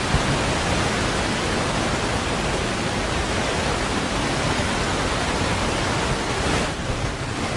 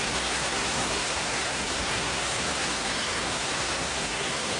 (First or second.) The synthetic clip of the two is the second